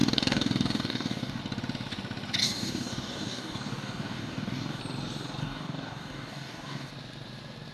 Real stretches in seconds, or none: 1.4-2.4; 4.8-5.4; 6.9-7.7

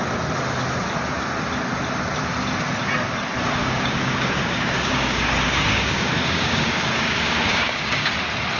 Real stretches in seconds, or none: 0.0-3.6; 8.1-8.6

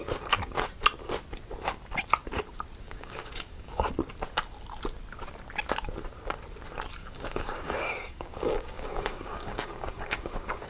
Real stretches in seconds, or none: 0.0-2.8; 3.9-7.0